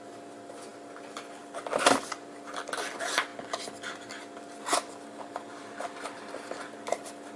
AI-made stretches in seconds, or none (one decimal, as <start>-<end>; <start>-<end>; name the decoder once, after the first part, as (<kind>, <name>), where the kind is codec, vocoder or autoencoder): none